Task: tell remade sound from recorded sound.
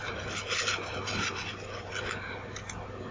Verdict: recorded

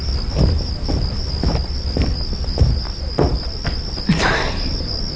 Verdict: recorded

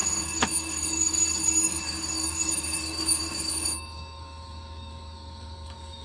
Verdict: remade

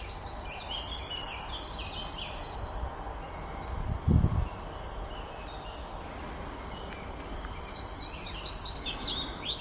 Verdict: recorded